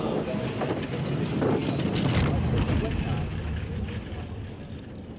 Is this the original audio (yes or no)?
yes